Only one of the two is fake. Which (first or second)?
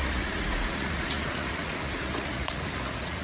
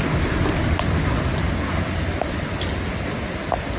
first